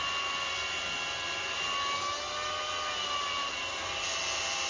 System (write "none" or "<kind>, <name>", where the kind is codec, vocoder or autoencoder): none